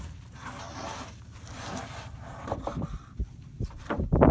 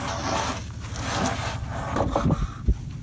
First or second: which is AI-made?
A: first